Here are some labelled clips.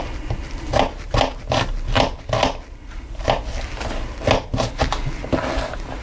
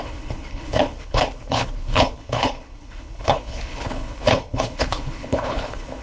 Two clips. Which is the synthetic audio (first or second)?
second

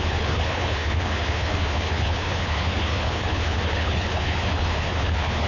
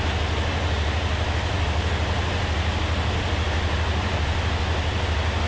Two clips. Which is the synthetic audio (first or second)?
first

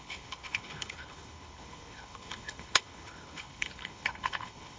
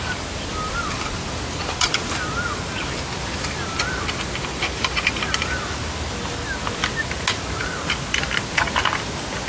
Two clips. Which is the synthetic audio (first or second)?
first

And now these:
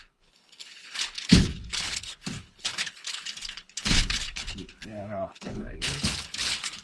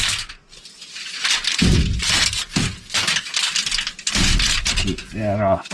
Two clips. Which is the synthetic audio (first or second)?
first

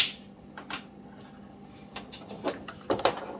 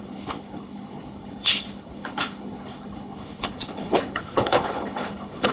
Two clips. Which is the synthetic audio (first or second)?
second